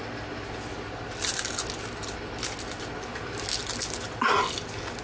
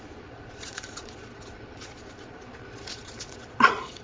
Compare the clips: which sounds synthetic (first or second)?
second